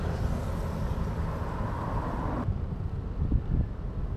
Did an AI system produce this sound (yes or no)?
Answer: no